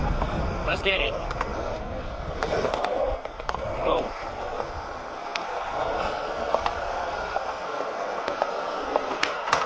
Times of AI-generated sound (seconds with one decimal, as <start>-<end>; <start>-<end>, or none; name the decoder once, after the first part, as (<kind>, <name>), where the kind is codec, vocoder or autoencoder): 0.0-9.7 (codec, SNAC)